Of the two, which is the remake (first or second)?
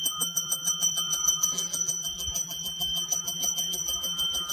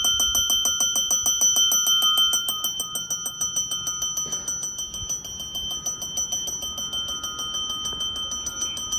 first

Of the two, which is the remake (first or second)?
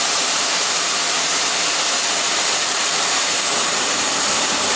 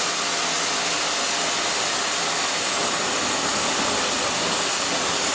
first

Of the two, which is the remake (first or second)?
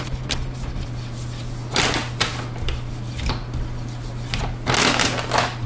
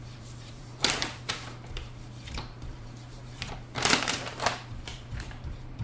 second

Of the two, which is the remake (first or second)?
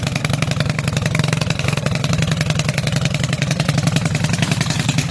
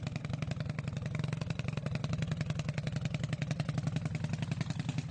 first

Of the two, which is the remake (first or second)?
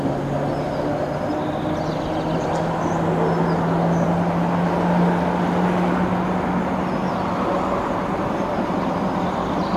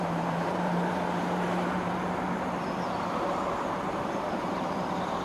second